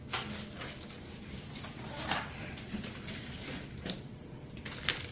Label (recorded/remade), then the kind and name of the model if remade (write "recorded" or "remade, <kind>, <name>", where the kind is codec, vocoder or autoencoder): recorded